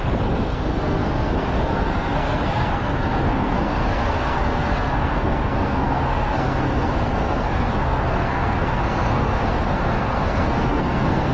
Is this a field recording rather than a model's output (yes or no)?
no